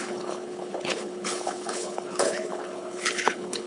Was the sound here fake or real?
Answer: fake